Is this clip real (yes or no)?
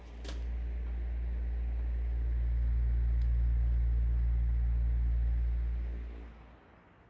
yes